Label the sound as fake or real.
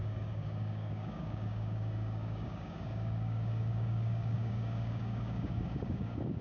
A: fake